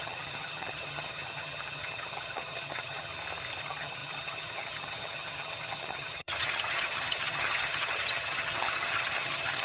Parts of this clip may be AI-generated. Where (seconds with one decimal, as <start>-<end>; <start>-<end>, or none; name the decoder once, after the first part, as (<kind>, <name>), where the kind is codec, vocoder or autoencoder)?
0.0-3.1 (vocoder, HiFi-GAN); 3.6-9.6